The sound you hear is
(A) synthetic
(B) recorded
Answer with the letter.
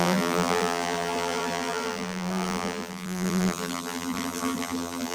A